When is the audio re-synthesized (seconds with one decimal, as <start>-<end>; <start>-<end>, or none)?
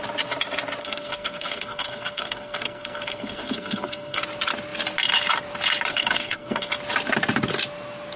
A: 0.8-4.2; 5.9-6.7